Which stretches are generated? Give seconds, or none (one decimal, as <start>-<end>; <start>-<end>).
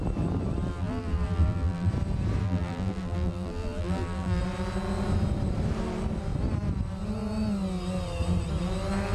0.7-1.9; 2.4-4.4